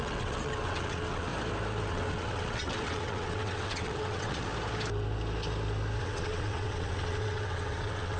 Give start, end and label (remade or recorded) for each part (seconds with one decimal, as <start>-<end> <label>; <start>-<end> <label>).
0.0-1.3 remade; 1.3-1.9 recorded; 1.9-4.5 remade; 4.5-6.0 recorded; 6.0-8.2 remade